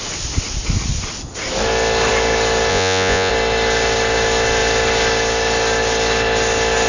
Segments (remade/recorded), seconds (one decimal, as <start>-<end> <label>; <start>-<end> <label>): 0.0-2.7 recorded; 2.7-3.3 remade; 3.3-6.9 recorded